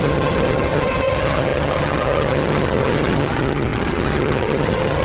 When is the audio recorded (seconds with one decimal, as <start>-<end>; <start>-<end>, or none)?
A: none